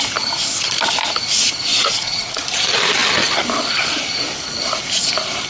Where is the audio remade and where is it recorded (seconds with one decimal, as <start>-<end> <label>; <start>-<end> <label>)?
0.0-1.7 recorded; 1.7-2.4 remade; 2.4-5.5 recorded